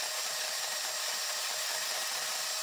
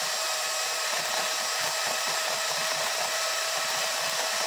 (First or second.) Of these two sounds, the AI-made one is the second